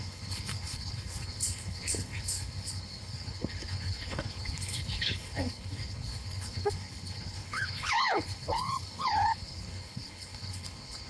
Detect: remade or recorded remade